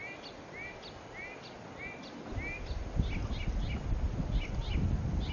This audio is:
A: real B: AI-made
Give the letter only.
A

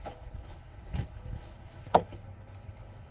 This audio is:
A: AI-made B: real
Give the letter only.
A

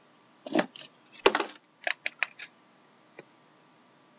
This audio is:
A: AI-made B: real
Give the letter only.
B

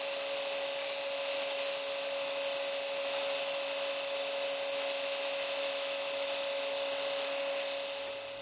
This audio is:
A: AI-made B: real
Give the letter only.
B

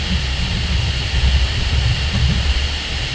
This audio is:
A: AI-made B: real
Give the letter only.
B